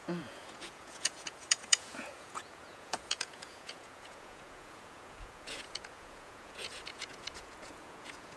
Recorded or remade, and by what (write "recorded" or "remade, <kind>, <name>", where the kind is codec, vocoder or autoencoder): remade, vocoder, Vocos